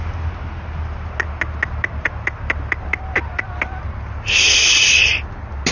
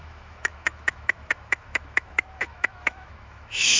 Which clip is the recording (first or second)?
first